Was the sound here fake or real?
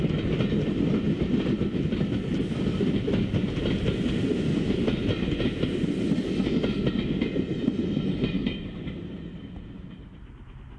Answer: real